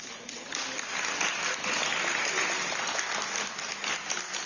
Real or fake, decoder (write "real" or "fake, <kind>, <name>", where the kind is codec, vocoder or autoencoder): real